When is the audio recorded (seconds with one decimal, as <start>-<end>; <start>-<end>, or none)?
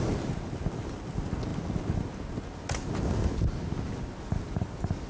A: 0.0-5.1